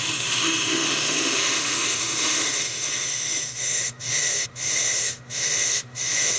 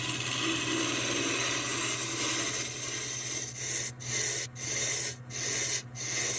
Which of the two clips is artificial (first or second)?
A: first